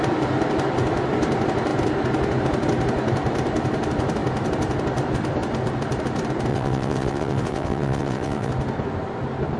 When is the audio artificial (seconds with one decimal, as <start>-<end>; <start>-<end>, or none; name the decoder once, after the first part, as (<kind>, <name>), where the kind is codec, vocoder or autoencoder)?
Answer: 6.5-8.5 (vocoder, WaveNeXt)